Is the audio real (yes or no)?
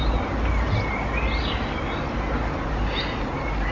yes